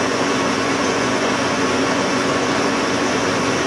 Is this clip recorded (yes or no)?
no